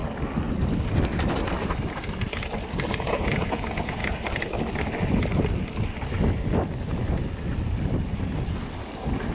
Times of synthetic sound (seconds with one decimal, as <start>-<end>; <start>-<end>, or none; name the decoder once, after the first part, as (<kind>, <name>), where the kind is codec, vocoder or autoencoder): 2.9-4.0 (vocoder, Vocos)